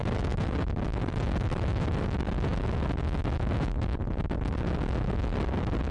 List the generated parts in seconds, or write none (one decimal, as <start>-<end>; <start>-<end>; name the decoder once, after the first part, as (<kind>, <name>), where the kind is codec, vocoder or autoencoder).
1.0-2.5 (vocoder, BigVGAN v2); 5.5-5.9